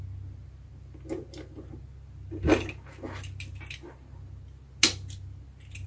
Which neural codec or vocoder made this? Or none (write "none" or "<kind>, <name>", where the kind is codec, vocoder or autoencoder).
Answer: none